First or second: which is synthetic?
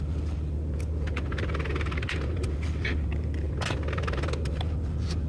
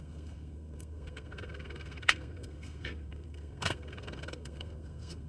second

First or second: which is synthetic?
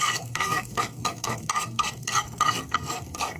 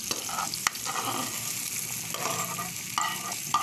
first